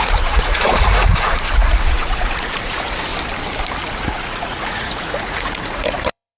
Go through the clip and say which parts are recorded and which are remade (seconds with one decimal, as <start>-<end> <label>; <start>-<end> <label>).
0.0-3.1 remade; 3.1-4.0 recorded; 4.0-6.4 remade